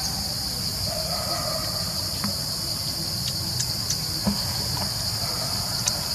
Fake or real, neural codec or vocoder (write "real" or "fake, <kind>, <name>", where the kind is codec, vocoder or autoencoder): real